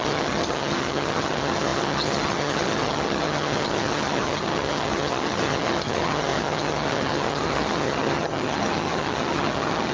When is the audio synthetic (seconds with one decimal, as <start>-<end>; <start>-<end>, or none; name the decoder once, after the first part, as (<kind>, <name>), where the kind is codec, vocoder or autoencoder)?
0.0-9.9 (vocoder, HiFi-GAN)